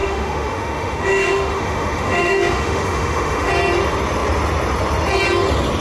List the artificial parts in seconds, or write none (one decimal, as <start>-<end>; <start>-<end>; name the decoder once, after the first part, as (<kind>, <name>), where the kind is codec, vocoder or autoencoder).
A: 0.0-3.5 (autoencoder, DAC-VAE)